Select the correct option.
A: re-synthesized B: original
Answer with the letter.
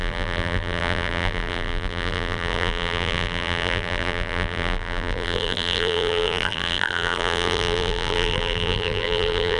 A